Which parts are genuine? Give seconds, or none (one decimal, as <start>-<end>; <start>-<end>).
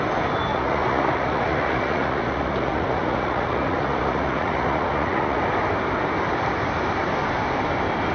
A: 0.0-0.5; 5.4-8.1